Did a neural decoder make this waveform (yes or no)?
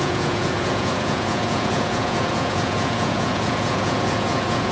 yes